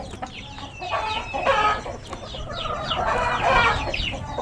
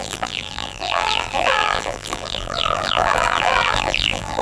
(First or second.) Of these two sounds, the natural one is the first